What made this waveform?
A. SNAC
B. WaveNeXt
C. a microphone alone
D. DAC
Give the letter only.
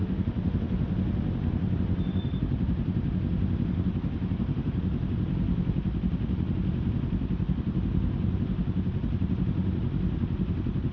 C